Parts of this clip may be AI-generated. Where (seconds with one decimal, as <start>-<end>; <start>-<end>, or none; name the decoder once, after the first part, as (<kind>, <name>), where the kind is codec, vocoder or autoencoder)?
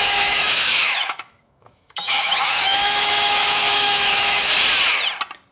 0.0-4.5 (autoencoder, DAC-VAE)